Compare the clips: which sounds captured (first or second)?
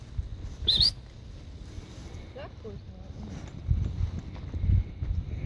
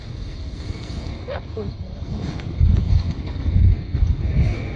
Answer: first